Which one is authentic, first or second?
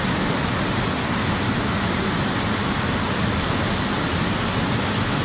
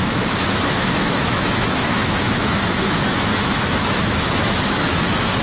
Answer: first